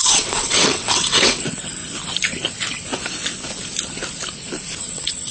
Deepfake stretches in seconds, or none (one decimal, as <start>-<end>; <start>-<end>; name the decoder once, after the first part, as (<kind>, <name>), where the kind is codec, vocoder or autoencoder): 0.0-1.8 (vocoder, WaveNeXt); 4.8-5.3